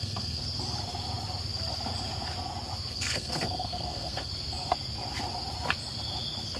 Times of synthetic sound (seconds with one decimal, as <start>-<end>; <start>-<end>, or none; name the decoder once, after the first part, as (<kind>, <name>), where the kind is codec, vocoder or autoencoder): 0.0-0.4 (codec, SNAC); 2.9-4.3